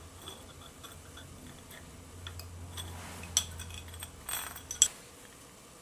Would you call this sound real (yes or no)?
yes